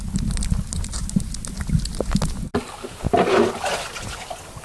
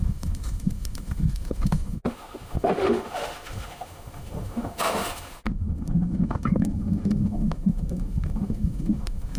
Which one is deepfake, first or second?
second